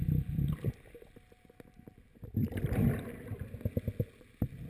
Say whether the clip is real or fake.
fake